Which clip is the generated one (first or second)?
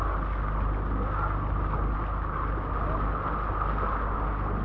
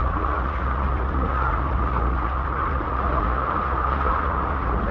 second